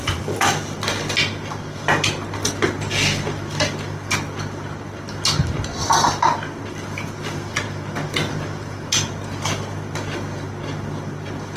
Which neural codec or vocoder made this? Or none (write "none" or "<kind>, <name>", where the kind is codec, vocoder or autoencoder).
none